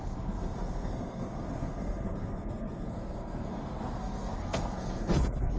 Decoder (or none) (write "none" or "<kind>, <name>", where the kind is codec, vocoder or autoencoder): codec, SNAC